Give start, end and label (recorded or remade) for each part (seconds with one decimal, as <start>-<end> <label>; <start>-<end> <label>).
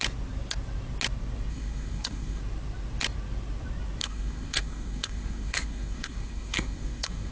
0.0-1.5 recorded; 1.5-2.4 remade; 2.4-4.0 recorded; 4.0-7.3 remade